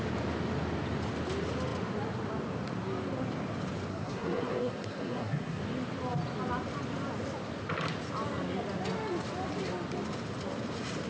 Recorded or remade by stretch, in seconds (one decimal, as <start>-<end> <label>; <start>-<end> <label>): 0.0-3.9 recorded; 3.9-5.6 remade; 5.6-11.1 recorded